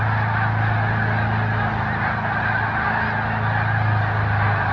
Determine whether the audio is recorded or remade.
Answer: recorded